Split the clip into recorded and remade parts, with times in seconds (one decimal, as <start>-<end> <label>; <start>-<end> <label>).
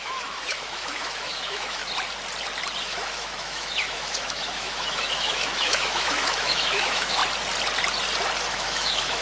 0.0-1.8 remade; 1.8-2.8 recorded; 2.8-7.2 remade; 7.2-8.5 recorded; 8.5-9.2 remade